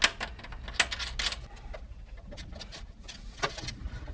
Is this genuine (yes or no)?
yes